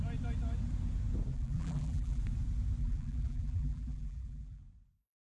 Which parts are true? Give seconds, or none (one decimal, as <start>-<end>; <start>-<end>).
0.0-1.3; 2.2-2.8; 4.6-5.3